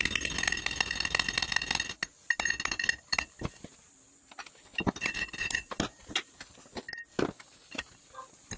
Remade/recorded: recorded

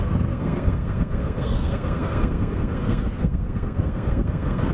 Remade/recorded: remade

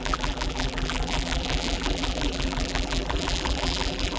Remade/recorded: remade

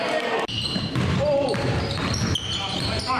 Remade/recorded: remade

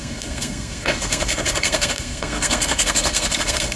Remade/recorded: remade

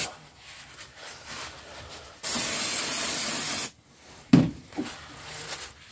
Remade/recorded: recorded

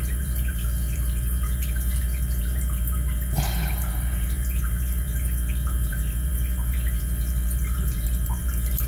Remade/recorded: remade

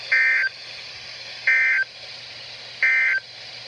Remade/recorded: recorded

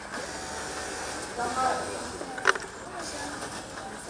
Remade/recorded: recorded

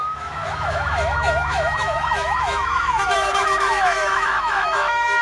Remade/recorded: remade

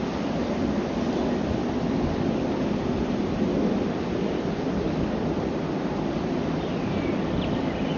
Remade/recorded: recorded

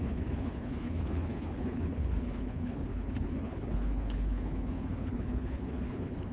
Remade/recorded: remade